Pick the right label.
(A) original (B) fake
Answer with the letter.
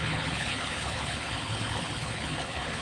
B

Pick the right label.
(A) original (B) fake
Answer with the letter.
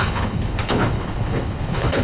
B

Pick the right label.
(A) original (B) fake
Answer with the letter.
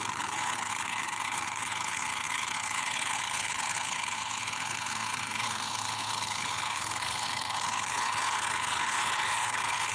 B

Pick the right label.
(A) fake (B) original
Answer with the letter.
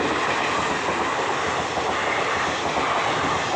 B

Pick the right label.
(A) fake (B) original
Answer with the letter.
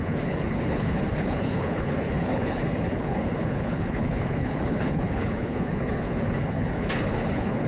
A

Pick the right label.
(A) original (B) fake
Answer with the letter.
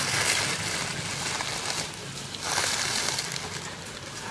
A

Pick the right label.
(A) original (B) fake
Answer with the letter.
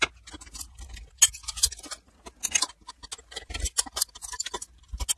A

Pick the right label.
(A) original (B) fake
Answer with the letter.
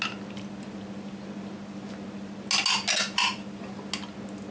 A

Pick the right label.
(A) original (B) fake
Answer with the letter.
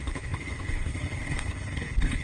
B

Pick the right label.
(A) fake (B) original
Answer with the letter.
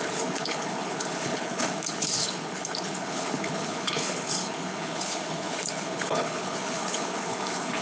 A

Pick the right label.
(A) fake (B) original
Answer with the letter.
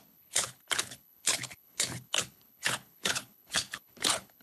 A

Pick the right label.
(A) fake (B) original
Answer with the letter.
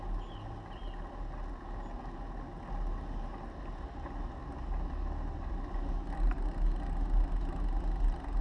B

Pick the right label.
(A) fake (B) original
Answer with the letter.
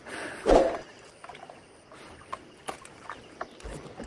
B